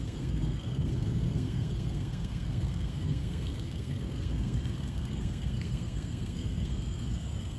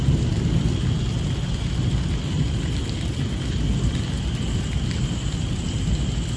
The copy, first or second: first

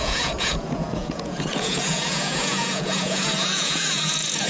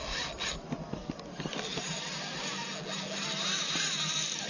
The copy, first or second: first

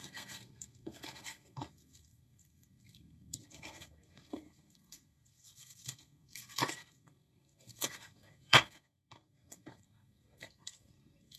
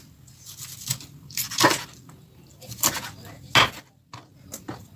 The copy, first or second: first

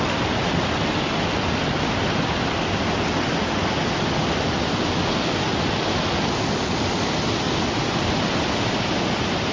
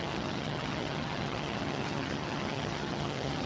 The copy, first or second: second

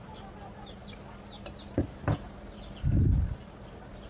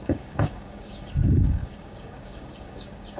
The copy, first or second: second